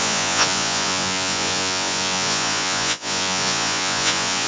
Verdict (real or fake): fake